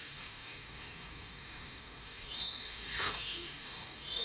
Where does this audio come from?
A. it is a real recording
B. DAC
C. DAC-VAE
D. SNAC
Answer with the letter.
B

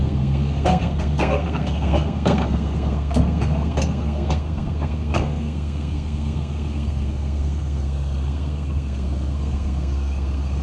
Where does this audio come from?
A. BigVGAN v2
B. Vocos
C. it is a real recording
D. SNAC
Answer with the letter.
D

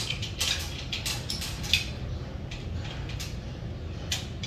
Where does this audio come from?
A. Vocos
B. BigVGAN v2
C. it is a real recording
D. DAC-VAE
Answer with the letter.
C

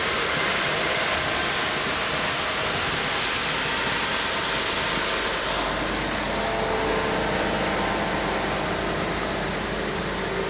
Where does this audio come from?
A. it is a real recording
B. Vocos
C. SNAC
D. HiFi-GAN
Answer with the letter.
A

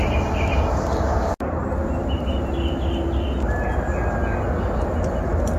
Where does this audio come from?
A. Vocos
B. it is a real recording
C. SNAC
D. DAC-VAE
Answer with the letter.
B